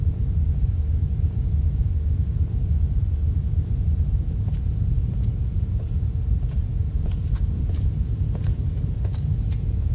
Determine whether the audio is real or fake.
fake